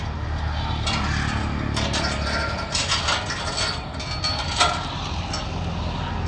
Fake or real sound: real